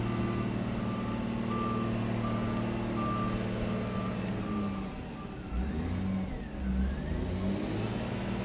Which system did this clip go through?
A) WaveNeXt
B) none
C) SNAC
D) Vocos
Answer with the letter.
B